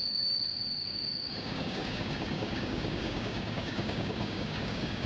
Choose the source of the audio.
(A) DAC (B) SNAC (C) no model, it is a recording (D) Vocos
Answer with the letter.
A